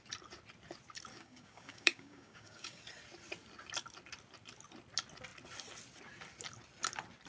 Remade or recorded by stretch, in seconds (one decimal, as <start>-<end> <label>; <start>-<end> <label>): 0.0-1.1 recorded; 1.1-2.8 remade; 2.8-7.3 recorded